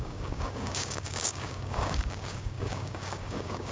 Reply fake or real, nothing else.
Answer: fake